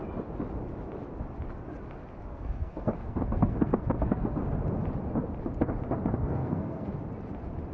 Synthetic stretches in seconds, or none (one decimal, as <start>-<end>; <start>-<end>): 2.3-4.4; 6.2-6.9